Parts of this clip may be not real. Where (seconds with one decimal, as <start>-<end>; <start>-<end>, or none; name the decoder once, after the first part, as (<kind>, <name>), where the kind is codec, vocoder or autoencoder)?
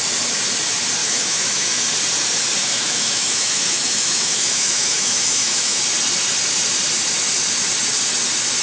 1.0-1.8 (autoencoder, DAC-VAE); 2.6-5.8